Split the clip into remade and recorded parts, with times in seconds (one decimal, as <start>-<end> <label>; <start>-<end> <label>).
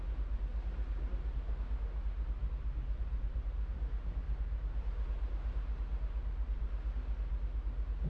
0.0-2.4 recorded; 2.4-4.9 remade; 4.9-8.1 recorded